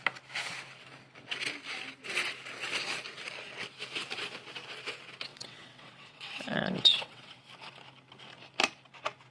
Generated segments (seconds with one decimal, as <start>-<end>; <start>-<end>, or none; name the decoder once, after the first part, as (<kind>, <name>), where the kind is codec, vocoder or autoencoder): 5.3-7.3 (vocoder, WaveNeXt)

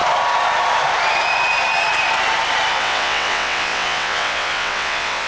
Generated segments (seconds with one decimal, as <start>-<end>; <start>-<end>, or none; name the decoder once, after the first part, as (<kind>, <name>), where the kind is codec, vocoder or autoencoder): 2.7-5.3 (vocoder, WaveNeXt)